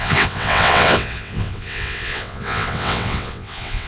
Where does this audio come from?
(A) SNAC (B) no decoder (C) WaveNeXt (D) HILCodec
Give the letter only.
C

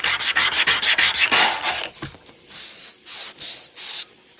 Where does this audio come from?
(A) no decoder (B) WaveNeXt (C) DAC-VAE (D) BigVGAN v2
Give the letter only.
A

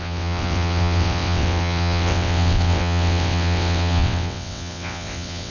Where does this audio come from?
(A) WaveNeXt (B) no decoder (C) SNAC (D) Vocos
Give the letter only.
A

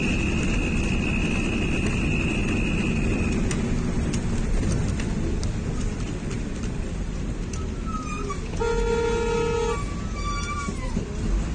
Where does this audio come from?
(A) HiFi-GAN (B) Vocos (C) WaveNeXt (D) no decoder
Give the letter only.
D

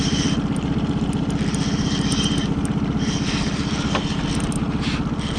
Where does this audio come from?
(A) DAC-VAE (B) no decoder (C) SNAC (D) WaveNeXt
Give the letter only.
B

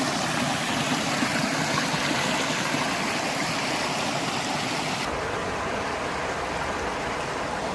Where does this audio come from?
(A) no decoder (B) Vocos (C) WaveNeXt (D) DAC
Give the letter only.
A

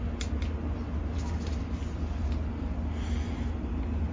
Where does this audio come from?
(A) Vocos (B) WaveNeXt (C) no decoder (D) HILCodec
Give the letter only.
C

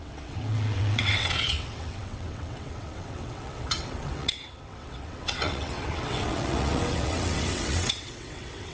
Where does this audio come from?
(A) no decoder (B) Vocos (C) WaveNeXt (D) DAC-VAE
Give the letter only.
C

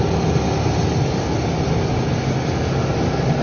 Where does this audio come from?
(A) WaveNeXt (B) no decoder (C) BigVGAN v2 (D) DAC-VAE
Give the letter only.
B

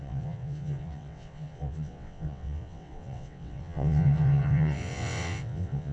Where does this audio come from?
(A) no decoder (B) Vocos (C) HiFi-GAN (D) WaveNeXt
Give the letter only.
D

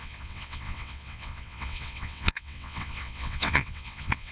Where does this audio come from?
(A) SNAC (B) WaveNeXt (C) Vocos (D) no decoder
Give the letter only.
B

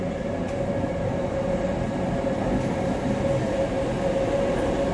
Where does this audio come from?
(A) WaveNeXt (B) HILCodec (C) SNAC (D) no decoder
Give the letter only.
D